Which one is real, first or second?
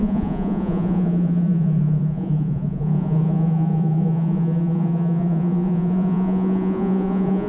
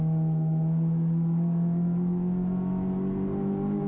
second